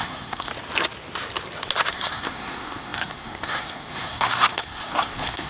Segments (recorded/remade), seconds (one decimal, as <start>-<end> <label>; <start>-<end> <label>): 0.0-0.5 remade; 0.5-1.9 recorded; 1.9-5.5 remade